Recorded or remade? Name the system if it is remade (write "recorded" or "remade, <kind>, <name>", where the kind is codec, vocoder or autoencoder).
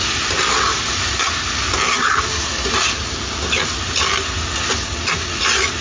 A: recorded